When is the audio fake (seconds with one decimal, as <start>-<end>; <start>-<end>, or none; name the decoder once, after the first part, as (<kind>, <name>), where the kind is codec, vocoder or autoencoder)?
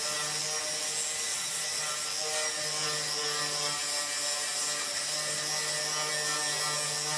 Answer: 1.3-1.8 (vocoder, WaveNeXt)